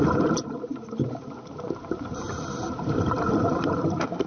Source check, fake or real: fake